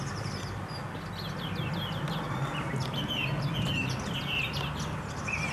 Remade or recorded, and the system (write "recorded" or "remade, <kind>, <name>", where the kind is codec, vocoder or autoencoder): recorded